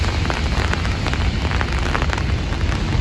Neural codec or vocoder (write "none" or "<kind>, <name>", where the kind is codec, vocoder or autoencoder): none